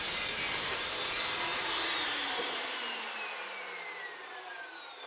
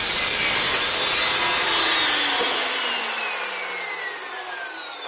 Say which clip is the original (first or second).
second